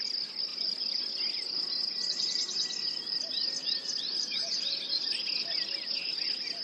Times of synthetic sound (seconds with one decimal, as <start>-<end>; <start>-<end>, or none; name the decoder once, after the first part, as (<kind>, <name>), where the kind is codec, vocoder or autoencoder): none